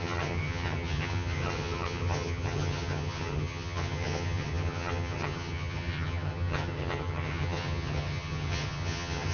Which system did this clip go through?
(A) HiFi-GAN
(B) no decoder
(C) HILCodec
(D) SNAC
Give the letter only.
A